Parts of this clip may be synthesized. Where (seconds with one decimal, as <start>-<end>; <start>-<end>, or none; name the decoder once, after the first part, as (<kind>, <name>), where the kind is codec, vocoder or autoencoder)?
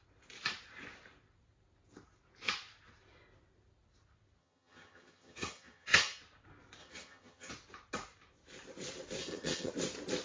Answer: 4.4-6.2 (vocoder, HiFi-GAN); 6.8-7.5; 9.2-9.7